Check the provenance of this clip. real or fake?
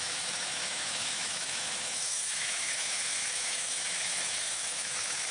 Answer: fake